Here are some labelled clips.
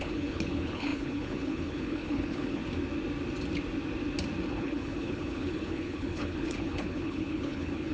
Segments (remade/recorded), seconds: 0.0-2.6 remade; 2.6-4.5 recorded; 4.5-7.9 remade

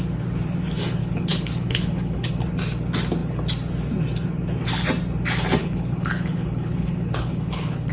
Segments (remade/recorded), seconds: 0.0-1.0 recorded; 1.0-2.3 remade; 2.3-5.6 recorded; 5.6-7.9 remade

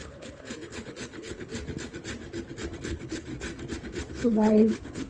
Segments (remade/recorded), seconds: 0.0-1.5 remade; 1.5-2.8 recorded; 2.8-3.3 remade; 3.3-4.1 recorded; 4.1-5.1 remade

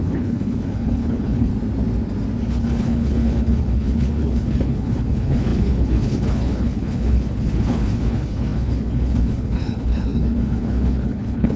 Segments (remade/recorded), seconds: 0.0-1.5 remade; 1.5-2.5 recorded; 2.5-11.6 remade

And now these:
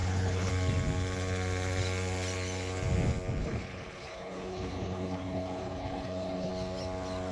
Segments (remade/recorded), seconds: 0.0-0.5 remade; 0.5-3.4 recorded; 3.4-6.5 remade; 6.5-7.3 recorded